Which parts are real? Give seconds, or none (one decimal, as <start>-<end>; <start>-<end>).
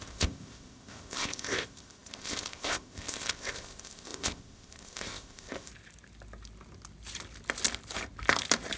5.7-8.8